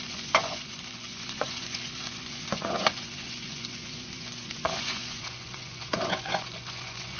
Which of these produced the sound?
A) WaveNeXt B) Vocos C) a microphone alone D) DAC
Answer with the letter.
B